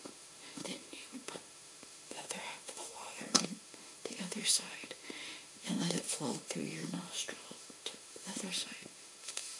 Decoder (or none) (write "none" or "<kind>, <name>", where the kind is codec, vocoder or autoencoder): autoencoder, DAC-VAE